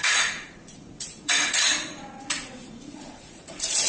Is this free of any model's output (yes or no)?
no